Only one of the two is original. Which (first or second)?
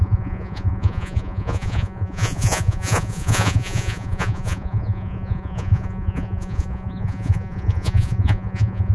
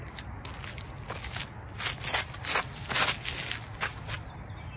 second